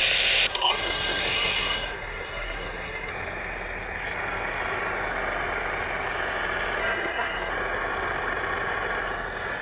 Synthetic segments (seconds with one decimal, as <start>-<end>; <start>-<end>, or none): 0.5-3.1; 6.8-7.5